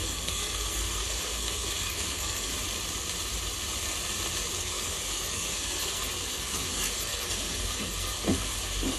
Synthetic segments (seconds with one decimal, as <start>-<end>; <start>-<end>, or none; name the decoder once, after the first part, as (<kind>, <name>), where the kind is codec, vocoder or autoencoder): 0.0-2.5 (codec, SNAC); 4.6-9.0

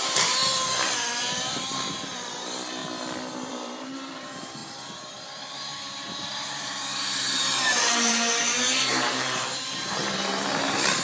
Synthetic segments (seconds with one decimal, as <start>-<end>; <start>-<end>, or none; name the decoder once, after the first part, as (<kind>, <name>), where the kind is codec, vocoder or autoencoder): 0.0-0.4 (vocoder, BigVGAN v2); 1.9-2.8; 3.5-11.0

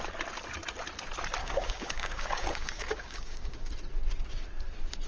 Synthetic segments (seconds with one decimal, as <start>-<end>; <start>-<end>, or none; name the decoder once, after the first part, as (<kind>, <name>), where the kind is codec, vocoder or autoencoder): 1.4-3.7 (codec, DAC)

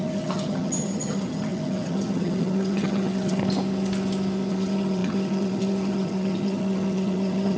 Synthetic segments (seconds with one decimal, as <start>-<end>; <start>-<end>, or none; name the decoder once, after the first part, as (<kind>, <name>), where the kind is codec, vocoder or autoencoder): 0.0-3.4 (vocoder, HiFi-GAN); 4.5-7.6

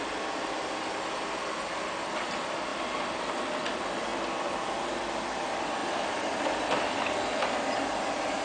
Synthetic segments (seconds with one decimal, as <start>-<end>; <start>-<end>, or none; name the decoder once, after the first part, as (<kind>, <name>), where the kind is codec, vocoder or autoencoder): 5.8-6.4 (vocoder, BigVGAN v2)